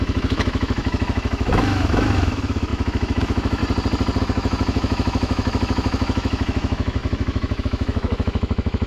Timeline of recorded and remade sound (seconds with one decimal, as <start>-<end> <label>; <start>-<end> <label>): 0.0-3.6 remade; 3.6-4.2 recorded; 4.2-8.9 remade